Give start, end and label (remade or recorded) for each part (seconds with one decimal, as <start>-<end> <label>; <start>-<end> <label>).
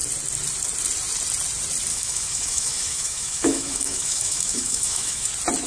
0.0-1.9 recorded; 1.9-5.3 remade; 5.3-5.7 recorded